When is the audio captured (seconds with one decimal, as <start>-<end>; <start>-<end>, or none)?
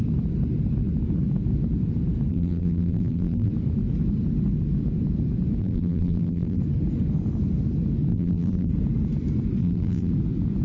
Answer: 0.0-2.3; 3.5-5.6; 6.6-8.1; 8.7-9.6; 10.1-10.6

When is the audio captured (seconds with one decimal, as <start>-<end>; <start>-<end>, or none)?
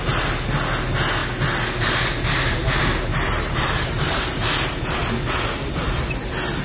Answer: 0.0-3.1; 5.0-6.6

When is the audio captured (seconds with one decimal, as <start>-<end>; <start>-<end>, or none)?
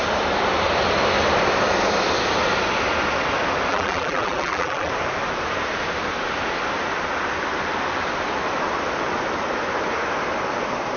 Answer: 0.0-3.7; 4.9-11.0